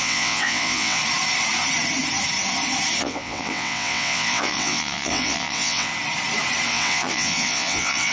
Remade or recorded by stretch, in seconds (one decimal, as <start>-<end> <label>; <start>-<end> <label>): 0.0-1.0 remade; 1.0-3.0 recorded; 3.0-5.9 remade; 5.9-6.7 recorded; 6.7-8.1 remade